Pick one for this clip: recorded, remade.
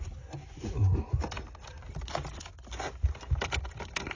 recorded